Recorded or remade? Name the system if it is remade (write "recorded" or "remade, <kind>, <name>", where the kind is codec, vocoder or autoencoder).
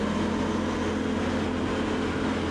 recorded